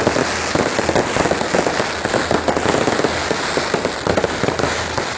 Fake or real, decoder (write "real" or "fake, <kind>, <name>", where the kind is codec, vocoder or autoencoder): real